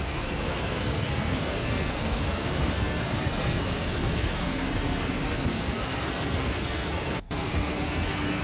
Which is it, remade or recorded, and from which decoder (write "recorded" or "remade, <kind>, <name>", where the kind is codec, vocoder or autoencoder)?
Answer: remade, codec, SNAC